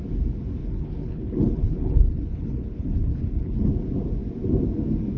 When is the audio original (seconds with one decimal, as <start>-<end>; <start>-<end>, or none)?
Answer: 0.0-0.6; 3.7-5.2